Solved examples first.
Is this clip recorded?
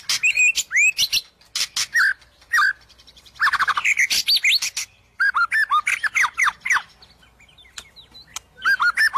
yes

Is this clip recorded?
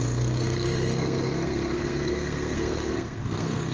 no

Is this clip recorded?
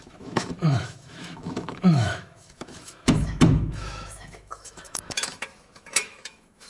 no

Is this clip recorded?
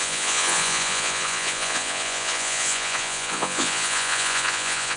no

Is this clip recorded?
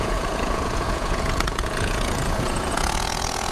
no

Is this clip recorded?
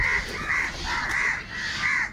yes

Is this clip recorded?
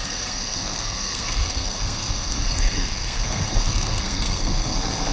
no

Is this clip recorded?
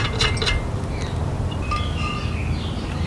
yes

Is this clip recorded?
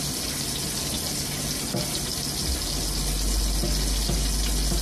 yes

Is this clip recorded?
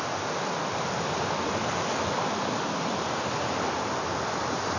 yes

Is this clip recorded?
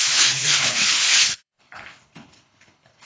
no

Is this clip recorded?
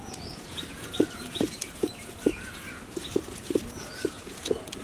no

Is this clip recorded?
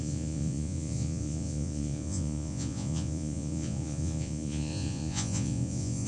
no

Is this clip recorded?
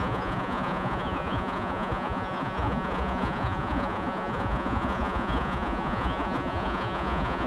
no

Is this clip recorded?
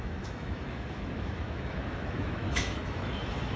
no